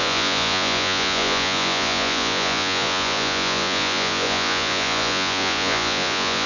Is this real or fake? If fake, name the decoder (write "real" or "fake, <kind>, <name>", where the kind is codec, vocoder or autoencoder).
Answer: fake, vocoder, Vocos